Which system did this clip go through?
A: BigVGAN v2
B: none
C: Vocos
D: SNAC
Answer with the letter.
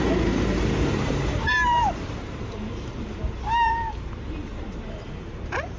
A